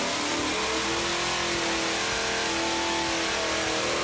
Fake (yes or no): no